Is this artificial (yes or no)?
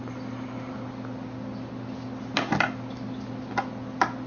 no